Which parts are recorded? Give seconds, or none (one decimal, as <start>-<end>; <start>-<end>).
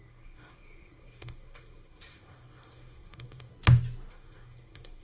3.5-4.1